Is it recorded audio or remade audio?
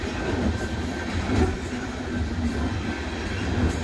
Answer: recorded